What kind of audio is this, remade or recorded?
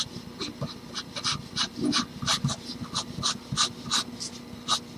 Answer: recorded